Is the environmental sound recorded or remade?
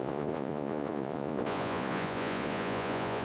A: remade